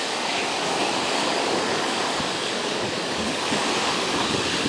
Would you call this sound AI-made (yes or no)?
yes